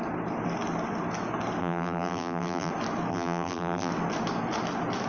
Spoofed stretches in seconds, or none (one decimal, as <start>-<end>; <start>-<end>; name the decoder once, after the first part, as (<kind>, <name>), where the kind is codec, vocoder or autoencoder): 1.6-2.7 (vocoder, BigVGAN v2); 3.1-3.9